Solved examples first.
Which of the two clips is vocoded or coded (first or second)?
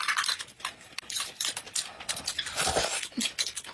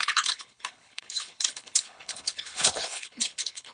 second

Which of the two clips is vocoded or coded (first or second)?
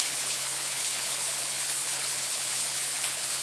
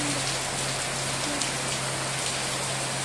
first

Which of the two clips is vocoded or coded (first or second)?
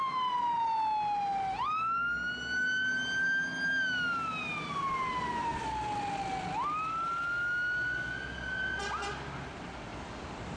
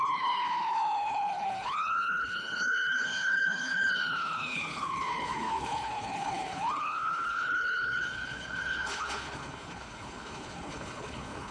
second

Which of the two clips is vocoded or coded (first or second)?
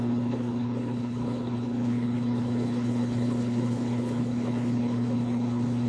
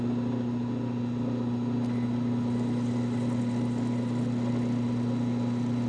first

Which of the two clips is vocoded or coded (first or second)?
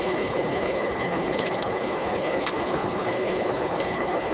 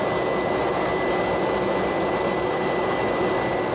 first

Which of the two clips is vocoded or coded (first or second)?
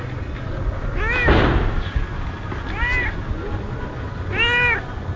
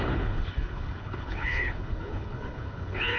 second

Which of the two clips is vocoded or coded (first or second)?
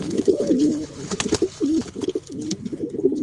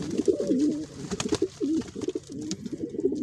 first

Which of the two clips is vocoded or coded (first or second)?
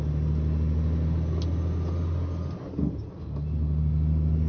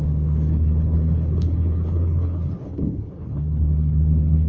second